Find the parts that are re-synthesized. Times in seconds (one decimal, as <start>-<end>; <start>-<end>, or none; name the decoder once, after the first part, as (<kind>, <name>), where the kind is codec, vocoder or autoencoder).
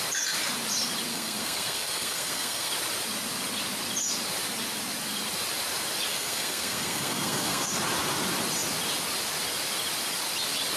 1.1-2.7 (codec, SNAC); 6.1-7.7